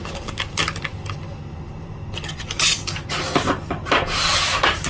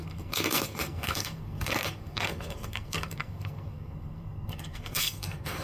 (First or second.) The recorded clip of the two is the first